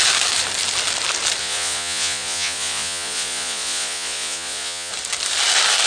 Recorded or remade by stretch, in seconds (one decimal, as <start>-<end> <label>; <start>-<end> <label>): 0.0-1.4 recorded; 1.4-4.9 remade; 4.9-5.9 recorded